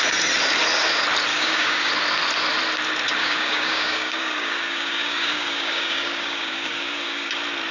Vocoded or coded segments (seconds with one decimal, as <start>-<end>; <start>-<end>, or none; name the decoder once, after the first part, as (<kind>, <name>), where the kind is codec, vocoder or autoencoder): 1.3-1.9 (codec, DAC); 3.2-7.3